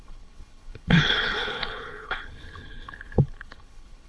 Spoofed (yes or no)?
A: yes